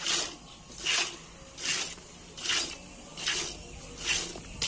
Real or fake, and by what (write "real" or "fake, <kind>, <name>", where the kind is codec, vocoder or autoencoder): real